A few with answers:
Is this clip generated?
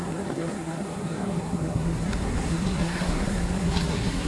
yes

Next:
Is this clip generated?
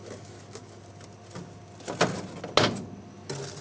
no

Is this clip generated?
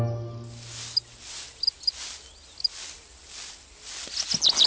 no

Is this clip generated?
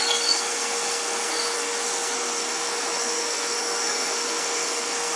yes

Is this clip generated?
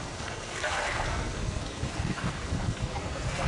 yes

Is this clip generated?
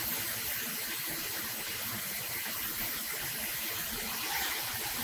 no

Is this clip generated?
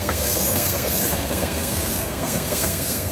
yes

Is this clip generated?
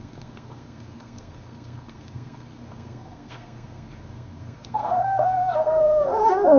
yes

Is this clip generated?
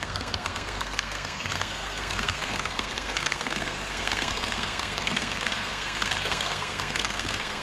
yes